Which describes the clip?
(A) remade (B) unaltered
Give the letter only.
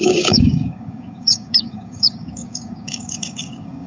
A